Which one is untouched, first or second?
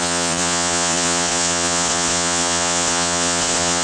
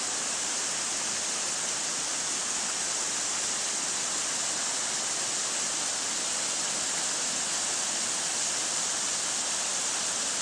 second